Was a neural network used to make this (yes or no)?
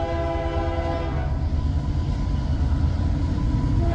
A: no